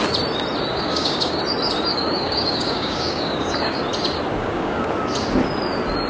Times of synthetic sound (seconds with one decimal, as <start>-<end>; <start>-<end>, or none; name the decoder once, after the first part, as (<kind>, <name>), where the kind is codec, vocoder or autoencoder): 0.7-1.4 (codec, DAC); 1.9-3.8; 4.4-4.9